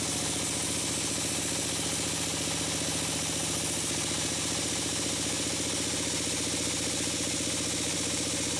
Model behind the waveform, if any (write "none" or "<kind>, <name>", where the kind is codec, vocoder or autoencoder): none